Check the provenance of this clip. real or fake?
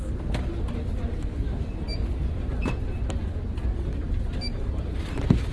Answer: real